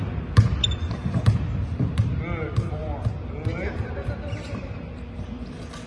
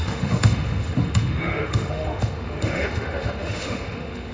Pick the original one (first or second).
first